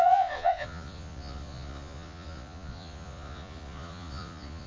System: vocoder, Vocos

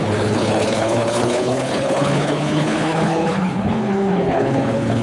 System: codec, HILCodec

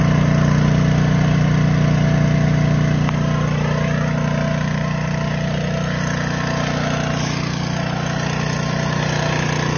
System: none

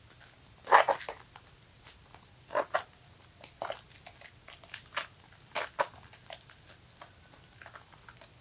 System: none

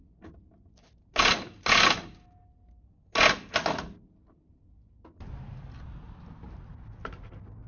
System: none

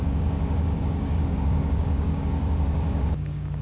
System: codec, DAC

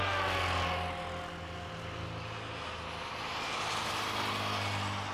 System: none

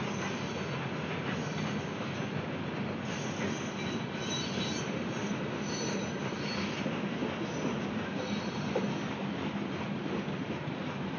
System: none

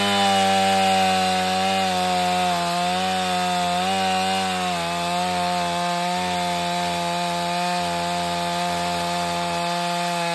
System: none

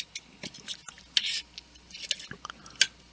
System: none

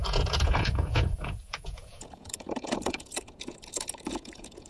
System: vocoder, Vocos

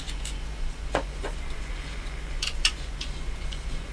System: vocoder, Vocos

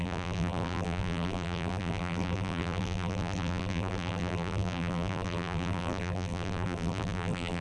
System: vocoder, BigVGAN v2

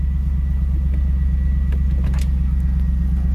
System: none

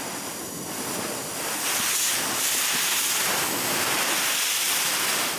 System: none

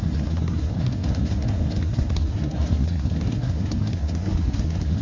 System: codec, SNAC